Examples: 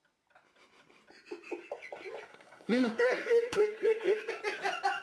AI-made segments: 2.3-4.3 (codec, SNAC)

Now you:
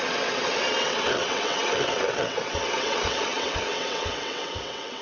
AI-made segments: 0.0-5.0 (vocoder, WaveNeXt)

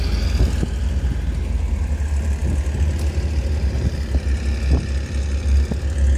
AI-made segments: none

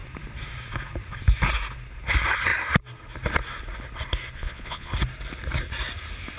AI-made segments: 4.4-4.9 (vocoder, Vocos)

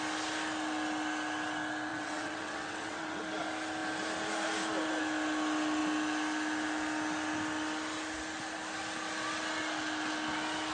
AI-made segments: 1.9-3.2 (vocoder, WaveNeXt)

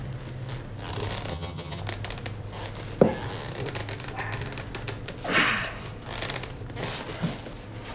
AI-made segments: 1.3-1.8 (vocoder, HiFi-GAN)

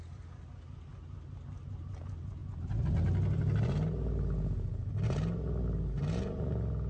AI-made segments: none